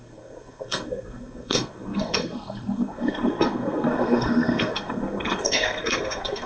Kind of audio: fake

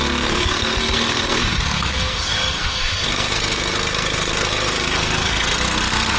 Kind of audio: fake